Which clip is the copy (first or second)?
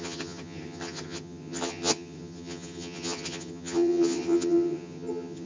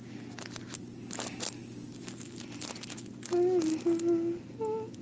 first